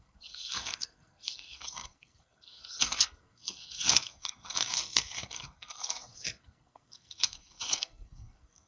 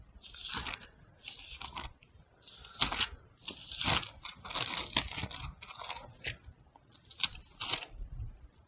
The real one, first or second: second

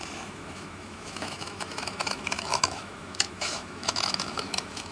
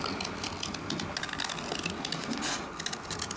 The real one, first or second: second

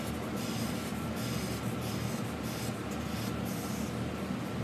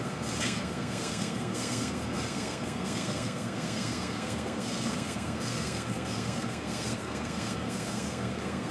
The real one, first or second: first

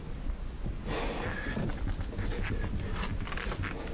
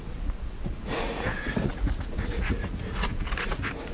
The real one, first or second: first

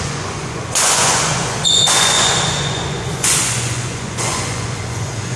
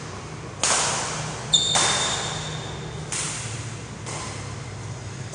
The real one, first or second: second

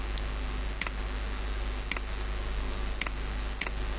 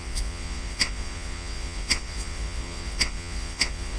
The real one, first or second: first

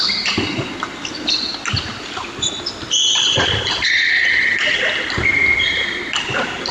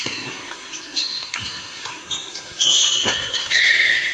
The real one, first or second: first